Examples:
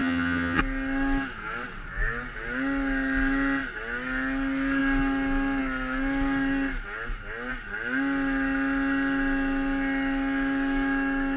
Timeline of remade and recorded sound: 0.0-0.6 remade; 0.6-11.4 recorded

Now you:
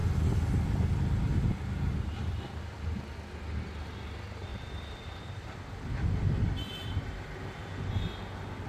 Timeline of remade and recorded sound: 0.0-0.7 remade; 0.7-1.3 recorded; 1.3-2.4 remade; 2.4-4.5 recorded; 4.5-7.1 remade; 7.1-8.7 recorded

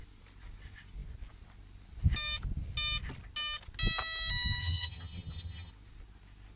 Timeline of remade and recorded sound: 0.0-4.6 recorded; 4.6-5.7 remade; 5.7-6.6 recorded

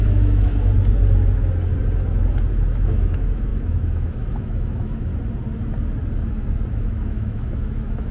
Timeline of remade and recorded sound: 0.0-0.5 remade; 0.5-2.7 recorded; 2.7-5.1 remade; 5.1-6.7 recorded; 6.7-8.1 remade

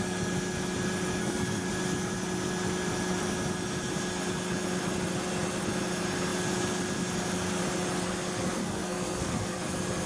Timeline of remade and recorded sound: 0.0-1.2 recorded; 1.2-1.7 remade; 1.7-8.6 recorded; 8.6-9.6 remade; 9.6-10.1 recorded